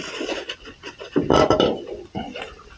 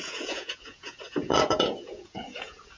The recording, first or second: first